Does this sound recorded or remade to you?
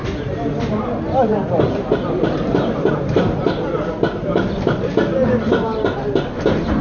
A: recorded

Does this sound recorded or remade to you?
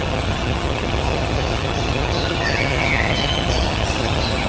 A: remade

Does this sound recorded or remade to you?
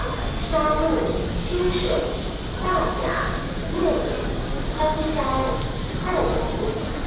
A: recorded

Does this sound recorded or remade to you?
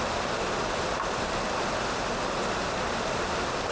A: recorded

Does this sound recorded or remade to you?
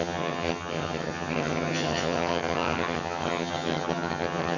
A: remade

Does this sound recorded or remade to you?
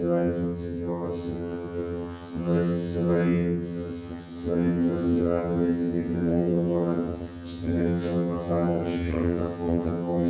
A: remade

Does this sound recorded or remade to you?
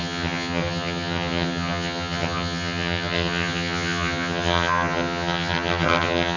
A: remade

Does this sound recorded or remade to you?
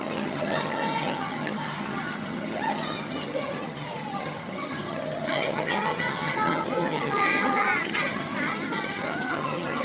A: remade